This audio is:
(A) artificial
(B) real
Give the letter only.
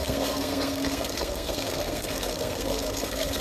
A